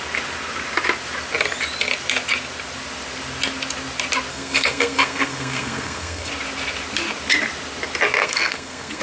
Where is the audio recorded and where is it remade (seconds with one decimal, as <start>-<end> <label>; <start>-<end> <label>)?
0.0-4.3 recorded; 4.3-6.3 remade; 6.3-8.2 recorded; 8.2-9.0 remade